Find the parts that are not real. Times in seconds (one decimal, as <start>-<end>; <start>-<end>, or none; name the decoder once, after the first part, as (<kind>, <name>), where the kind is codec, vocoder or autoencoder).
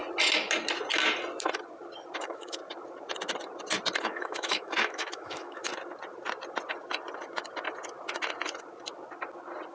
2.2-2.6 (autoencoder, DAC-VAE); 4.0-5.7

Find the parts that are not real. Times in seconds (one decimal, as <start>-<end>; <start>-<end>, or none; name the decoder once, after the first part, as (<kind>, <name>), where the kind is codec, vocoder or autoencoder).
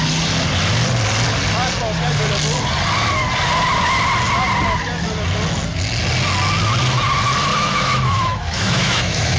7.5-9.4 (autoencoder, DAC-VAE)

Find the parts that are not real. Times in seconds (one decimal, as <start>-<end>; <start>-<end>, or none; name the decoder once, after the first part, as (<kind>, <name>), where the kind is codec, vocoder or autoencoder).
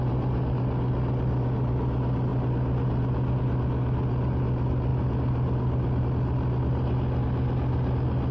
none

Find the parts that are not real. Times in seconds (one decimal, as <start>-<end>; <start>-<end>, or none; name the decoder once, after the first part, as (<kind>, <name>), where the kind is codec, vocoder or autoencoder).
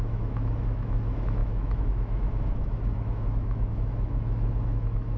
0.0-5.2 (autoencoder, DAC-VAE)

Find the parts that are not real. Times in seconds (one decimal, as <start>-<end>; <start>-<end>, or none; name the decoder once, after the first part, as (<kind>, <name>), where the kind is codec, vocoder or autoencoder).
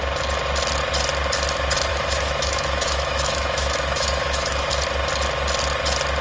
1.9-4.7 (autoencoder, DAC-VAE)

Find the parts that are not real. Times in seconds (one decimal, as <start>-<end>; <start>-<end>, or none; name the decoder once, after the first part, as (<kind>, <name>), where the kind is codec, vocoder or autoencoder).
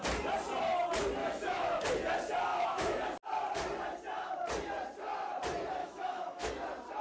1.2-1.8 (autoencoder, DAC-VAE); 2.5-3.0; 5.8-6.5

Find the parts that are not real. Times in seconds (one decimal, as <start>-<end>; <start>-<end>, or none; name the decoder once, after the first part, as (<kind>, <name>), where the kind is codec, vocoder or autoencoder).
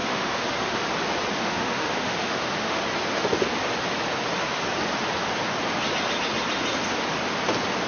0.0-0.8 (autoencoder, DAC-VAE); 1.4-2.8